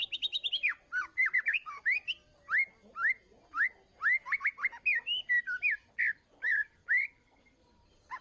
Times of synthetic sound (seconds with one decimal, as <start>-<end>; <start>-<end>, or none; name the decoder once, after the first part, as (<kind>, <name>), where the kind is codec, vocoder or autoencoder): 0.5-2.3 (vocoder, BigVGAN v2); 6.0-8.2